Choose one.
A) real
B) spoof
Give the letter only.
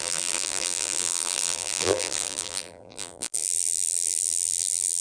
B